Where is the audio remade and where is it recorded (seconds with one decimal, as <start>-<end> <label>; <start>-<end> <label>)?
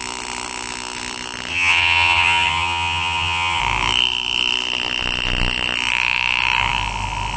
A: 0.0-1.5 recorded; 1.5-3.6 remade; 3.6-7.4 recorded